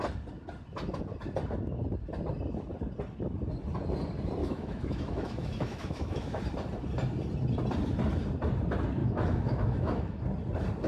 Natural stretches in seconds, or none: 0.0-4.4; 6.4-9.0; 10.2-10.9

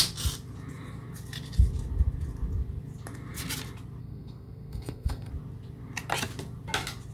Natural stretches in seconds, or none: 0.0-4.0; 5.3-7.1

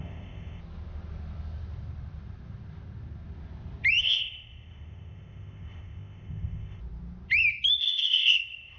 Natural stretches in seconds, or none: 0.6-4.0; 6.8-7.8

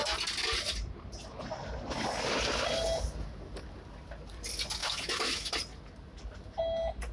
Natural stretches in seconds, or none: 0.0-4.8; 5.5-7.1

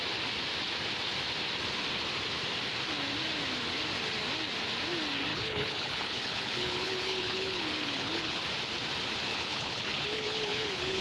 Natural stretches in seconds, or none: 0.0-5.3; 8.4-9.3

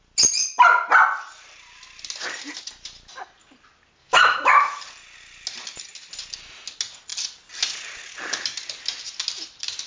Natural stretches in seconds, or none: 0.0-4.0; 4.8-9.9

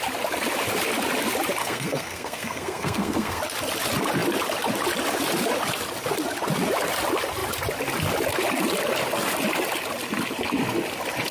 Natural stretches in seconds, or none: 0.0-1.6; 3.4-11.3

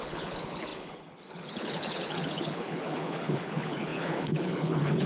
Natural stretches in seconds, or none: none